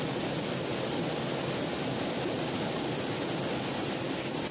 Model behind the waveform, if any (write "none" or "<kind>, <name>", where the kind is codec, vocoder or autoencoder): none